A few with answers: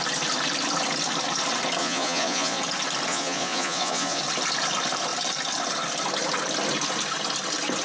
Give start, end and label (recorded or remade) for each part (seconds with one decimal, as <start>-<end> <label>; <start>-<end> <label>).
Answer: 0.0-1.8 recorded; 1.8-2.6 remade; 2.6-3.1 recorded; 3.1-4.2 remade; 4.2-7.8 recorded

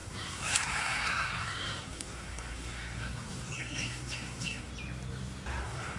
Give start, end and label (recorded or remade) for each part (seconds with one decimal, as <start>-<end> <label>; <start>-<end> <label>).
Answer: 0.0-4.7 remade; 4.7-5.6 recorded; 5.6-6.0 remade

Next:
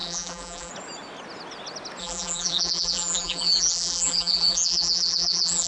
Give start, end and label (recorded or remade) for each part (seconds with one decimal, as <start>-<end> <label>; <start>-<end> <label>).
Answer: 0.0-0.7 remade; 0.7-2.0 recorded; 2.0-5.7 remade